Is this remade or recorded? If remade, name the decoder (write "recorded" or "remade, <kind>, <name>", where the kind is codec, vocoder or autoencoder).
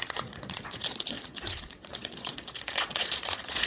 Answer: remade, vocoder, Vocos